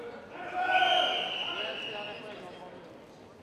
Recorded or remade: recorded